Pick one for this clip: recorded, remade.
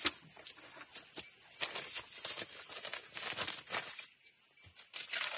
recorded